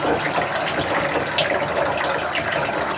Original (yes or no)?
yes